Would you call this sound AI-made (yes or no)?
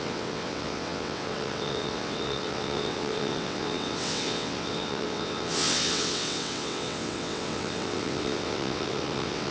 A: yes